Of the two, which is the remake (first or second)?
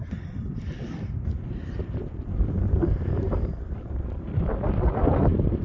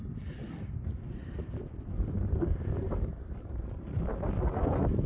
first